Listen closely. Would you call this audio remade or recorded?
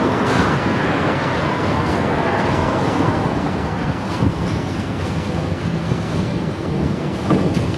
remade